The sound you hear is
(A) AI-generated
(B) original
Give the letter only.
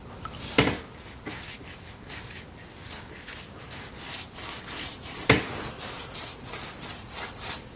B